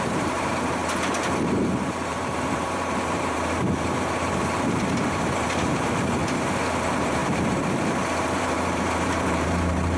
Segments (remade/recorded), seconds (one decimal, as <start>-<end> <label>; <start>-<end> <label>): 0.0-0.8 remade; 0.8-1.8 recorded; 1.8-6.2 remade; 6.2-6.7 recorded; 6.7-10.0 remade